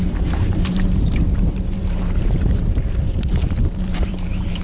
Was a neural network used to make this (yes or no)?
yes